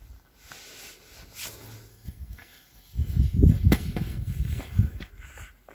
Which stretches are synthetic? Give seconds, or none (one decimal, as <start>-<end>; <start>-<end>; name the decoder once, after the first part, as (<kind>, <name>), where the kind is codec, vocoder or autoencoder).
1.9-5.1 (codec, SNAC)